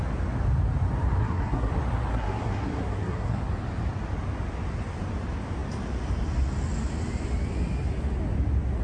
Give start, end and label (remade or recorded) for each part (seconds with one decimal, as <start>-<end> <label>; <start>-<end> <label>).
0.0-1.2 recorded; 1.2-1.7 remade; 1.7-2.1 recorded; 2.1-3.4 remade; 3.4-8.8 recorded